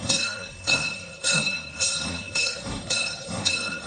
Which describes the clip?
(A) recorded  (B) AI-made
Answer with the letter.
B